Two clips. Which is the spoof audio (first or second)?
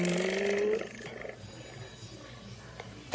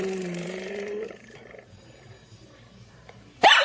second